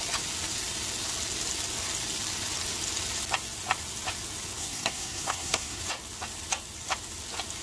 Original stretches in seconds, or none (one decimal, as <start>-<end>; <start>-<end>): 0.0-4.6; 5.8-7.6